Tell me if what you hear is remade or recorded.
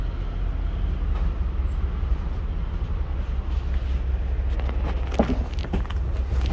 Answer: recorded